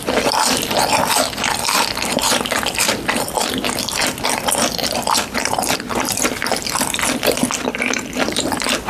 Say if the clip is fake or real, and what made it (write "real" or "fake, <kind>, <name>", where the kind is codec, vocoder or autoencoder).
fake, vocoder, BigVGAN v2